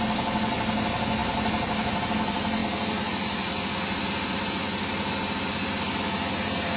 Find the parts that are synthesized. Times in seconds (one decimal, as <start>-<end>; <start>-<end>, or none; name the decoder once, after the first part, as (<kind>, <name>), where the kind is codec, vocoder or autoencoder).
1.2-2.0 (vocoder, BigVGAN v2)